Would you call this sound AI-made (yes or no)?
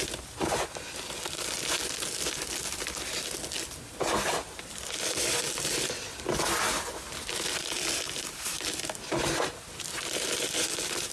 no